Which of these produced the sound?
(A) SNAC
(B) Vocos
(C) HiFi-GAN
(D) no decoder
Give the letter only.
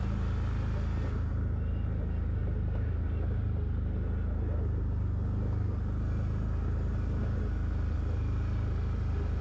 D